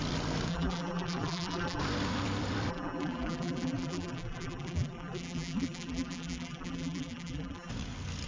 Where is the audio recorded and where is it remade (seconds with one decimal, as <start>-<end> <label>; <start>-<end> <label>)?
0.0-0.5 recorded; 0.5-1.8 remade; 1.8-2.7 recorded; 2.7-7.7 remade; 7.7-8.3 recorded